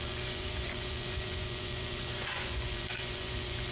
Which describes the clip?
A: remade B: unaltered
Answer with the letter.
A